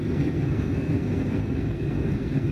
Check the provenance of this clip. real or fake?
fake